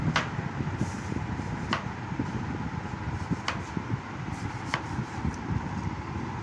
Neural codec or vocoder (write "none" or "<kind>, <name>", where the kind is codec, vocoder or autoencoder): none